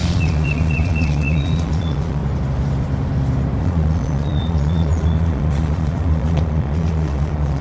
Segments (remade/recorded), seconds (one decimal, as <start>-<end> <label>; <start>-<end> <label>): 0.0-2.2 remade; 2.2-3.6 recorded; 3.6-7.6 remade